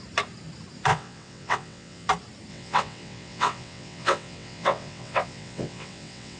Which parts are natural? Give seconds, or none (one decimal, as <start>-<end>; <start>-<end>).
0.0-0.9; 2.1-2.5